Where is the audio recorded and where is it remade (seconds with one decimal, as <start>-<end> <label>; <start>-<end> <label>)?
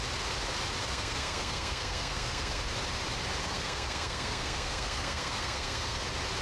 0.0-0.8 recorded; 0.8-2.6 remade; 2.6-3.4 recorded; 3.4-6.0 remade; 6.0-6.4 recorded